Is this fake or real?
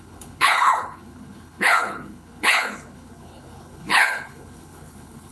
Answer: fake